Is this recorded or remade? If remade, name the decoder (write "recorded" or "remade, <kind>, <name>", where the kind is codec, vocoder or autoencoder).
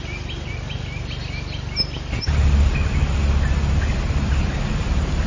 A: recorded